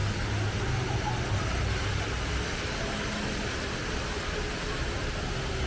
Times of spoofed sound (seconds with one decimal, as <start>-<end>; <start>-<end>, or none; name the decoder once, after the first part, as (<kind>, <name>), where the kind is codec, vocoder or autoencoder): none